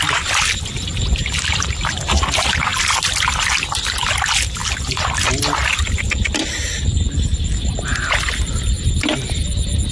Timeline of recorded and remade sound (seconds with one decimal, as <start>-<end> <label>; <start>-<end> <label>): 0.0-9.9 recorded